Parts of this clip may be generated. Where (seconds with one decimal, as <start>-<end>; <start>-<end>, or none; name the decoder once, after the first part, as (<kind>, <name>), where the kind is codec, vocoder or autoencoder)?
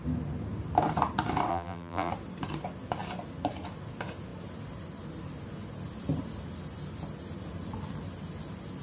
1.5-2.1 (vocoder, BigVGAN v2)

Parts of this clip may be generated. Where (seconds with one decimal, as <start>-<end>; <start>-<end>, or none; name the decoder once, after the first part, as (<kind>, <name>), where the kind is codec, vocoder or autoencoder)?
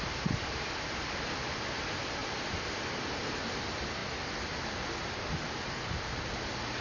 2.2-2.8 (vocoder, BigVGAN v2)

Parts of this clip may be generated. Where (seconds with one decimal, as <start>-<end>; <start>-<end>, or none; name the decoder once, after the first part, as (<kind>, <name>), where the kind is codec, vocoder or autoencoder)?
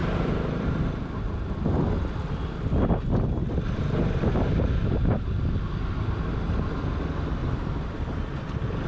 0.0-0.8 (vocoder, BigVGAN v2); 7.4-8.0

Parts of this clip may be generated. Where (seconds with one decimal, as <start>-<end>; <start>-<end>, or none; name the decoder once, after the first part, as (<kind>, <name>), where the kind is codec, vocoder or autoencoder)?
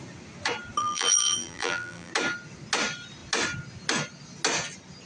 0.8-2.1 (vocoder, BigVGAN v2)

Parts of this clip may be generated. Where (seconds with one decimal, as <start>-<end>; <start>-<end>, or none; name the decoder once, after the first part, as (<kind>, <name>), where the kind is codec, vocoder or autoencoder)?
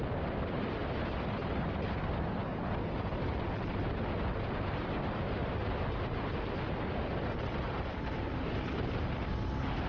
7.9-8.5 (vocoder, BigVGAN v2)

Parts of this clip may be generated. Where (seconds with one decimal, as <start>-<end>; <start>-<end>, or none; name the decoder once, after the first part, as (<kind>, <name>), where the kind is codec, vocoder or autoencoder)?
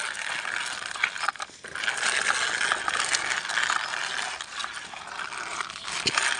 4.6-5.4 (vocoder, BigVGAN v2)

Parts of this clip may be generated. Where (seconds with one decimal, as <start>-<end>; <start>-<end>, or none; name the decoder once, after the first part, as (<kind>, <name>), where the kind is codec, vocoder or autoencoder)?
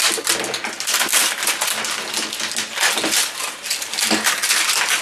none